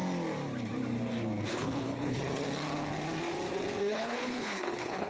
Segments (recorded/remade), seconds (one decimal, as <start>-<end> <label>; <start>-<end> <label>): 0.0-1.5 recorded; 1.5-2.2 remade; 2.2-3.9 recorded; 3.9-5.1 remade